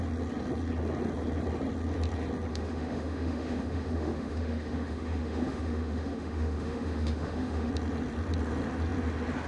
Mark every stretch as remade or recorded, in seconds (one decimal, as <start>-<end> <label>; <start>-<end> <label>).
0.0-2.5 recorded; 2.5-7.7 remade; 7.7-9.5 recorded

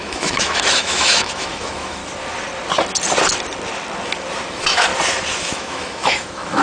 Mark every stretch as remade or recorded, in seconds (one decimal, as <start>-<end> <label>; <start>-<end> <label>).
0.0-2.0 remade; 2.0-4.5 recorded; 4.5-4.9 remade; 4.9-5.4 recorded; 5.4-6.6 remade